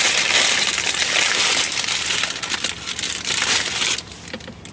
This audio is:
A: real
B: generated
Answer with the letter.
A